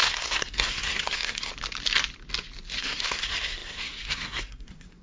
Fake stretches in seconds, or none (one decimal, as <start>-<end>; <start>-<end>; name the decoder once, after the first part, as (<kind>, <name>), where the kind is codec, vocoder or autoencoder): 0.0-1.5 (codec, SNAC); 2.8-5.0

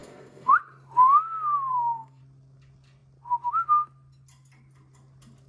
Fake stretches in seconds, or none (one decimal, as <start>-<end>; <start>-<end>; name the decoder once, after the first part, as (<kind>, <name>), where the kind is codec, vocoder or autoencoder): 0.0-0.5 (codec, SNAC); 1.7-2.2

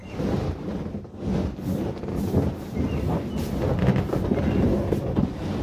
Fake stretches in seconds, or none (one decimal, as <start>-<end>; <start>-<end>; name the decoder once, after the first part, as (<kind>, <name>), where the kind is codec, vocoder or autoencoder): none

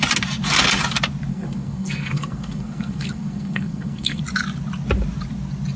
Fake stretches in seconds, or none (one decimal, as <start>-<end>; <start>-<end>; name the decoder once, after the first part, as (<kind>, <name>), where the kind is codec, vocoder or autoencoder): 1.3-4.2 (codec, SNAC)

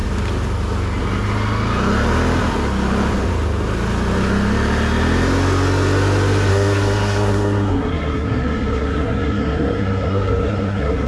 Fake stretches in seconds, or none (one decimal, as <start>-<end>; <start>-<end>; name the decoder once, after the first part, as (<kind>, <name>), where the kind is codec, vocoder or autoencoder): 6.5-11.1 (codec, SNAC)

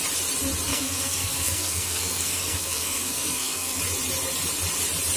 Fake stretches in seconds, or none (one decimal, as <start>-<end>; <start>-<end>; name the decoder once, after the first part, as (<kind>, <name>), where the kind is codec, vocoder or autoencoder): 0.7-3.8 (codec, SNAC)